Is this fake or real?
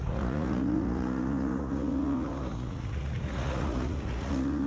fake